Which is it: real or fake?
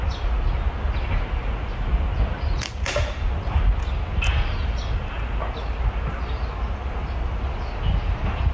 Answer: real